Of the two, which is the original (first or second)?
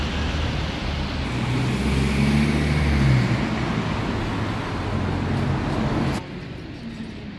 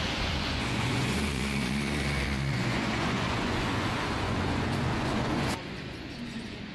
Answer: first